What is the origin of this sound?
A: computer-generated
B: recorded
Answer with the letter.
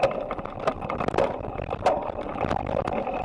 B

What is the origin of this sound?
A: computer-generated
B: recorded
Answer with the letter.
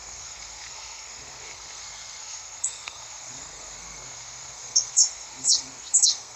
A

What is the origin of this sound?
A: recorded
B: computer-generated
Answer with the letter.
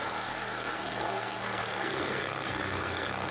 B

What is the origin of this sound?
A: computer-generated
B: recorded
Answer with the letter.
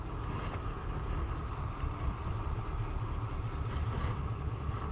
B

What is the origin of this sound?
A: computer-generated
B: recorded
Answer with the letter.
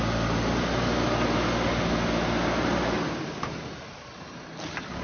B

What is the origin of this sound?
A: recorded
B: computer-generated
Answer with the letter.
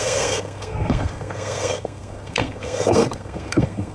B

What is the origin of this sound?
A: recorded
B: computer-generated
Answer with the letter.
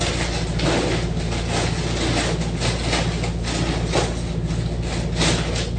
A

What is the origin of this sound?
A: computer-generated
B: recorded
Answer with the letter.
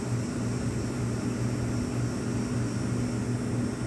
B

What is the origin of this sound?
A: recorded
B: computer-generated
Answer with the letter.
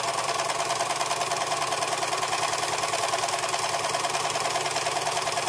A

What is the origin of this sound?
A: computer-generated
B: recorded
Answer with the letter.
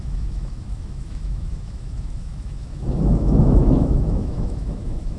A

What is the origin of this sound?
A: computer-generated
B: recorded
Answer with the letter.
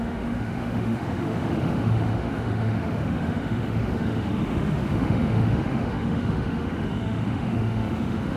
A